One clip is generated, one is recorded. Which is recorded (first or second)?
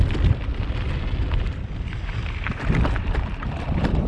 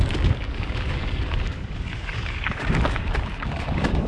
first